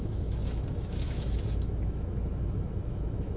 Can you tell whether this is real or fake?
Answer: fake